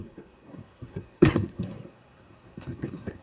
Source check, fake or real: fake